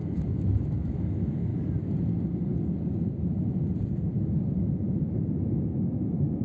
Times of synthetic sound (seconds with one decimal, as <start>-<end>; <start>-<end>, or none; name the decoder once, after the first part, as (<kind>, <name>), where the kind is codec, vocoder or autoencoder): 0.0-1.5 (autoencoder, DAC-VAE); 5.1-6.4